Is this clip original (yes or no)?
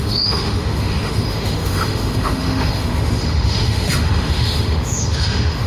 no